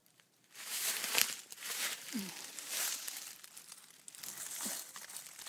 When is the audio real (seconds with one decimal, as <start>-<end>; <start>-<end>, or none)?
3.3-5.5